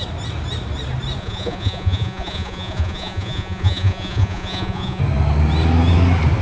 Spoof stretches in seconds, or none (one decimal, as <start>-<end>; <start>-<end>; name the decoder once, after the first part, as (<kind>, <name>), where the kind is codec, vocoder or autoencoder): 1.2-5.0 (vocoder, Vocos)